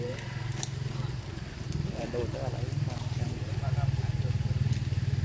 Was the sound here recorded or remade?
recorded